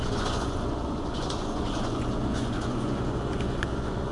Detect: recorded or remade remade